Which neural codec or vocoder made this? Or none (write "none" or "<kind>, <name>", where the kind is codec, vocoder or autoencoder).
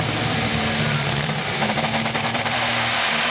vocoder, BigVGAN v2